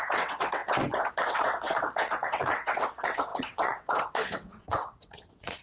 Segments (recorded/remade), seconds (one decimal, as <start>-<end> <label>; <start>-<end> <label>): 0.0-5.6 remade